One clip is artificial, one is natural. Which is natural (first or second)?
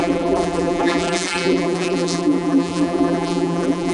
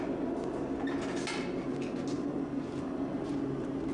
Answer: second